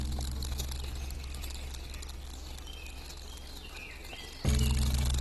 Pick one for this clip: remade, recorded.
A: recorded